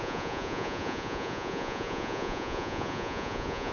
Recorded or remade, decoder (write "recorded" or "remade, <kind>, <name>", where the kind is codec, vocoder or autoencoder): remade, vocoder, Vocos